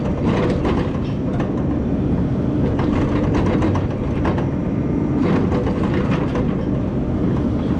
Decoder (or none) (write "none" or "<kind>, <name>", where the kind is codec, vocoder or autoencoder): none